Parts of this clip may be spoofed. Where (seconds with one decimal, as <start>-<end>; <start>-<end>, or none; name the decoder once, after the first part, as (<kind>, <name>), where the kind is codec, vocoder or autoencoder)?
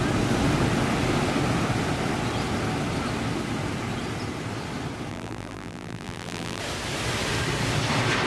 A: 5.1-6.6 (vocoder, BigVGAN v2)